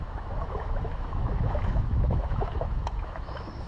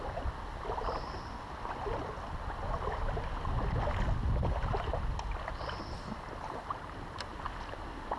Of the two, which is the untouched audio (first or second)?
second